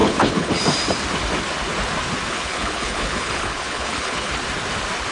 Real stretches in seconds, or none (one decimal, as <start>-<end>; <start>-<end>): 0.6-2.3; 4.3-5.1